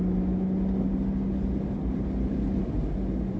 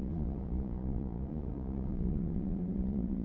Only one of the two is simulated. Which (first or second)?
second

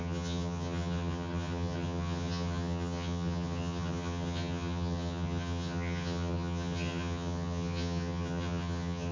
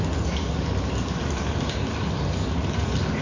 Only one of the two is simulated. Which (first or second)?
first